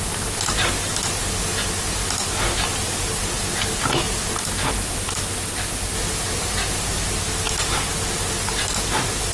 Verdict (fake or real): real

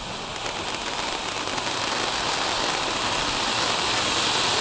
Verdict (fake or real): real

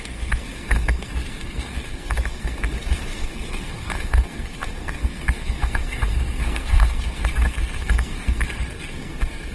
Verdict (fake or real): fake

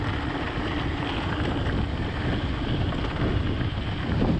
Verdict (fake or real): real